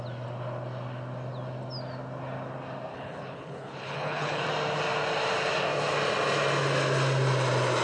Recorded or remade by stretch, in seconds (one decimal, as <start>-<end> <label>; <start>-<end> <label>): 0.0-2.9 recorded; 2.9-4.4 remade; 4.4-7.8 recorded